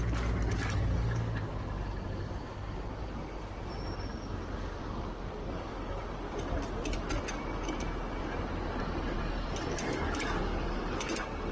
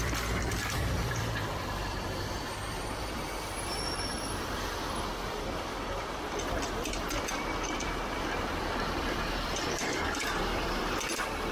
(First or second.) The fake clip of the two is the second